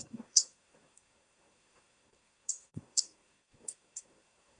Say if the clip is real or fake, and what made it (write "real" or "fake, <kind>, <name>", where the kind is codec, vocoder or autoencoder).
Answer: fake, codec, SNAC